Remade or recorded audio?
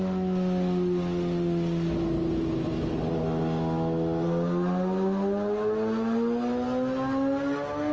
recorded